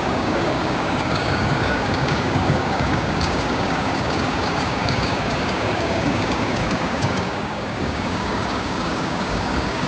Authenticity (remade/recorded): remade